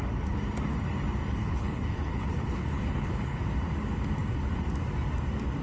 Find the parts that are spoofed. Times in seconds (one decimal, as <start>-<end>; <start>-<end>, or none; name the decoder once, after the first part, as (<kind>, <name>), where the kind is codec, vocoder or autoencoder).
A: 1.4-3.4 (codec, HILCodec)